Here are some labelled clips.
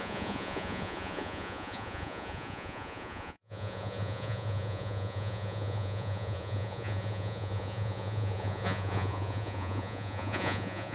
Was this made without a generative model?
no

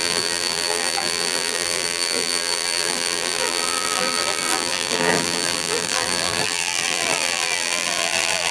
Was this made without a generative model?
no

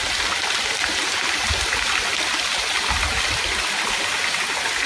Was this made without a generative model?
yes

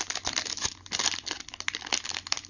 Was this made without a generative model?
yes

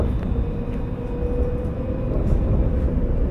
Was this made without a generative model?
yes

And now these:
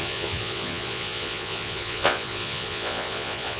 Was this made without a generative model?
no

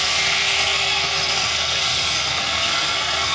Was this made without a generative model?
no